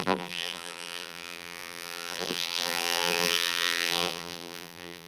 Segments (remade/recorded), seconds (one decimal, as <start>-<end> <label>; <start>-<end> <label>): 0.0-5.1 remade